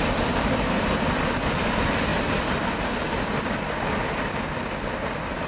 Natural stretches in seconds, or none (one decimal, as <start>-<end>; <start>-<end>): 0.0-5.5